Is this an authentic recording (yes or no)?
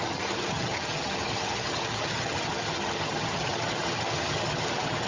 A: no